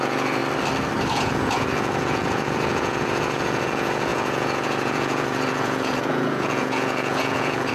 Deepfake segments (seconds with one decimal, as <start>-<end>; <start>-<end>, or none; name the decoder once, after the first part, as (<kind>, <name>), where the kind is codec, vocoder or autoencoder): 0.0-0.4 (vocoder, Vocos); 1.1-7.7